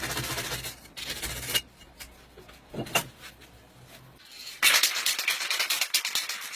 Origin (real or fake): real